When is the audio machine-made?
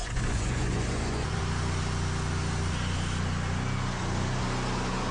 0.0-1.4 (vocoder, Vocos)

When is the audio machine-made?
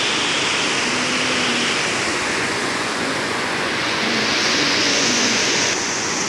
2.1-6.3 (vocoder, Vocos)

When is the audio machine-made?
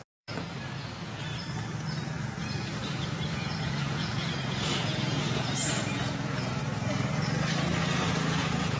0.0-1.3 (vocoder, Vocos); 2.0-2.8; 3.3-6.6; 7.8-8.8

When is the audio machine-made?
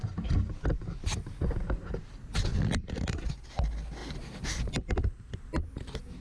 none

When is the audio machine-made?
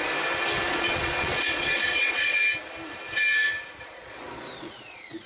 0.7-2.4 (vocoder, Vocos); 3.8-5.3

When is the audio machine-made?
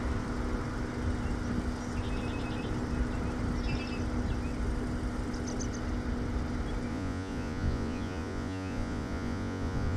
6.9-10.0 (vocoder, Vocos)